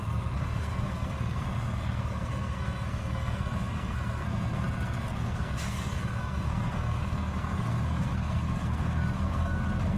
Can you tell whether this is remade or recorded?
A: remade